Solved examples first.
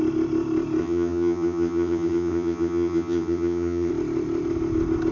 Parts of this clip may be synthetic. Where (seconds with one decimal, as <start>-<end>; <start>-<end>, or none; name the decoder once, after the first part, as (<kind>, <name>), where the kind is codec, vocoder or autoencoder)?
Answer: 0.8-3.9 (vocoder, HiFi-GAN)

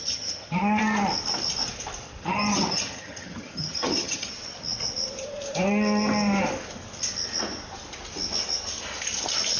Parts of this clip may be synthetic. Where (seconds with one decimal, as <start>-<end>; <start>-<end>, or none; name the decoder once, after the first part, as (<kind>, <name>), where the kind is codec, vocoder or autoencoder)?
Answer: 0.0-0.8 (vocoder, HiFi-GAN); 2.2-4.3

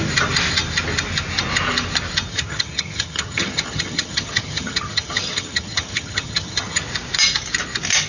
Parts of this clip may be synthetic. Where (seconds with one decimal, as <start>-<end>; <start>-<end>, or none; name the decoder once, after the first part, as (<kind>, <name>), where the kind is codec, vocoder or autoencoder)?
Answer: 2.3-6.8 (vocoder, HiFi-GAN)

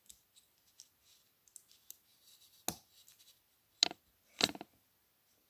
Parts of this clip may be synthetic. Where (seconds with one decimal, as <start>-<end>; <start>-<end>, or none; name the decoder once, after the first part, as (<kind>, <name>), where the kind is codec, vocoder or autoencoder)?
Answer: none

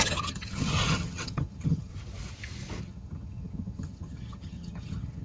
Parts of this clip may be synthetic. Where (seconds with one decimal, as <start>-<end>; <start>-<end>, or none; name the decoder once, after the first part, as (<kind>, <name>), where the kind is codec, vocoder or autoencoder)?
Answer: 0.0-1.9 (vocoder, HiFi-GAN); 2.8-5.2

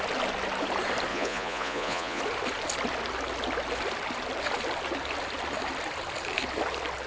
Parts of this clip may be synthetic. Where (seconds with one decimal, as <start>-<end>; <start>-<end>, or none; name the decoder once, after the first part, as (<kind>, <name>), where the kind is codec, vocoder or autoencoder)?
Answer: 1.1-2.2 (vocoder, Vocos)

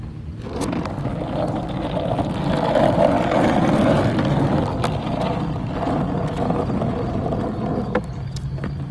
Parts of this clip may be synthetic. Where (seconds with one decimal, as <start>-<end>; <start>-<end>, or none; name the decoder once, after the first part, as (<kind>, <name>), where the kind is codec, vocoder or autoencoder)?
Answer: 1.1-5.7 (vocoder, BigVGAN v2)

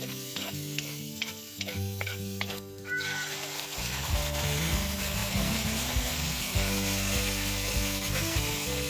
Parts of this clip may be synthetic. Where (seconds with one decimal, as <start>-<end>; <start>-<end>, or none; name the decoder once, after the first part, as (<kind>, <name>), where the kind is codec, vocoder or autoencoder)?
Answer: 0.0-8.9 (codec, SNAC)